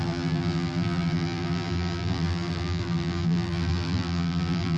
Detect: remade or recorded remade